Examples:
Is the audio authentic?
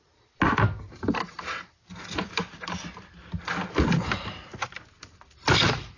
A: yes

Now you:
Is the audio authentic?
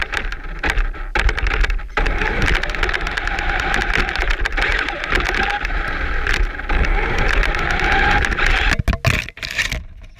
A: yes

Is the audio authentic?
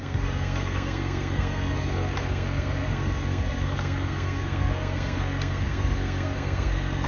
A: no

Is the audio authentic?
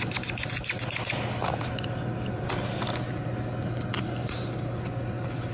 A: yes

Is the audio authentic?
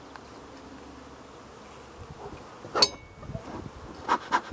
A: yes